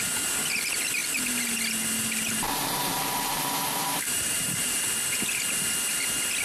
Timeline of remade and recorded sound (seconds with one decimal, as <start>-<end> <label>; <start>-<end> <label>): 0.0-2.9 recorded; 2.9-3.4 remade; 3.4-3.8 recorded; 3.8-4.8 remade; 4.8-6.4 recorded